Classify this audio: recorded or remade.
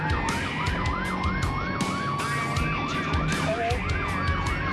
recorded